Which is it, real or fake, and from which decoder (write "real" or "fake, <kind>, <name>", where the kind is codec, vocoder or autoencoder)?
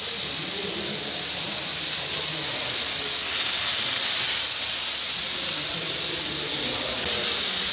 real